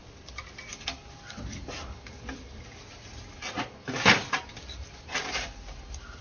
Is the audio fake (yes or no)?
no